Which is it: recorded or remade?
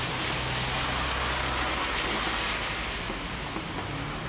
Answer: recorded